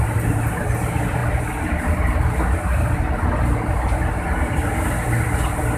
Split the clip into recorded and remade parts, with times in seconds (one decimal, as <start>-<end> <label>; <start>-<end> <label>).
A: 0.0-5.8 recorded